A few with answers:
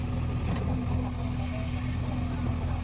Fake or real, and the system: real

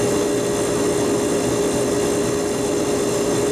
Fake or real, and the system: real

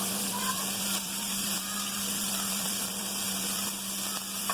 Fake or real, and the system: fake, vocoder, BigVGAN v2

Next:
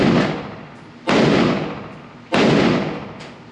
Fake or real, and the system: real